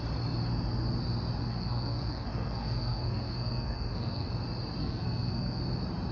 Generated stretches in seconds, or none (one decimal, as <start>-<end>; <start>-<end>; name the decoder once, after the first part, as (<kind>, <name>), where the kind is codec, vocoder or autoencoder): 1.4-4.3 (codec, SNAC); 4.8-5.6